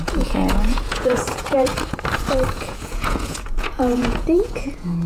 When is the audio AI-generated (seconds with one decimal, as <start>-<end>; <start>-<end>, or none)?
0.0-1.7; 2.5-5.1